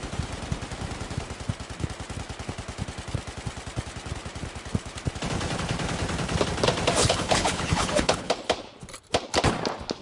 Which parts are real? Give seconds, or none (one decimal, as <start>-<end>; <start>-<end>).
0.0-7.0; 8.3-10.0